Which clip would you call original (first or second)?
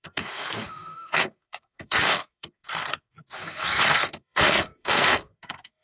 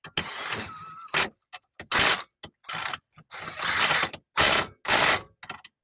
second